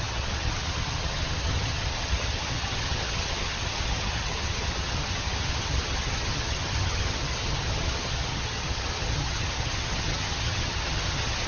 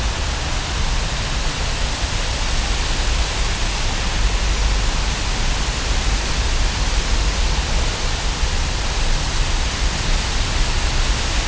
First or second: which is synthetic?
first